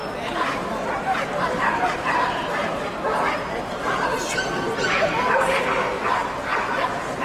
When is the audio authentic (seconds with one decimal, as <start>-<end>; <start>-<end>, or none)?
0.0-6.5